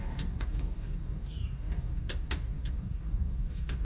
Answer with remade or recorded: remade